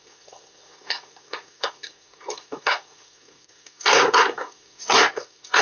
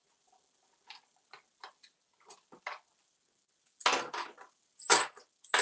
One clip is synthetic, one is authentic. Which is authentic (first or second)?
second